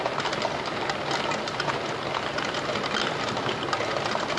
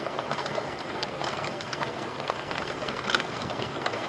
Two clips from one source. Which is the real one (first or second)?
first